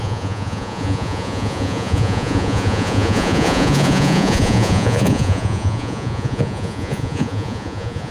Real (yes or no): no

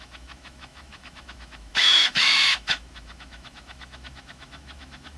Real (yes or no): no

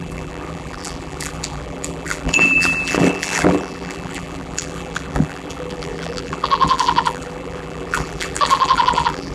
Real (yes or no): no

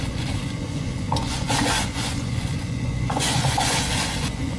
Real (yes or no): no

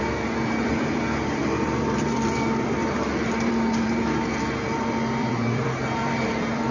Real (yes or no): no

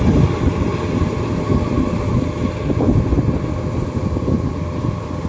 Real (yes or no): yes